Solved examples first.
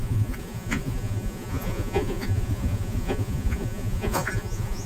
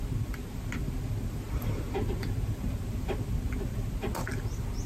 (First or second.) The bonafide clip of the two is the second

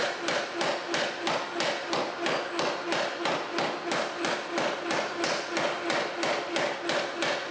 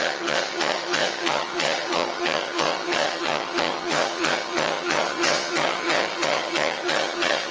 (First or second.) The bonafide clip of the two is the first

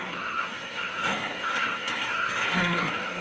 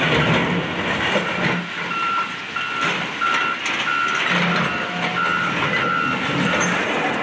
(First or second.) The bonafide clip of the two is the second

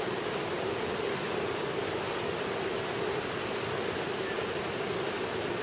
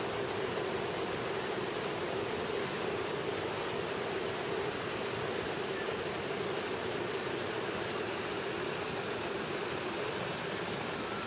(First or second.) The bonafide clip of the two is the first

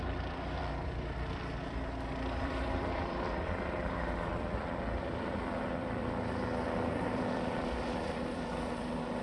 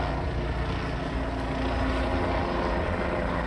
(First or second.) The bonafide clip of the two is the second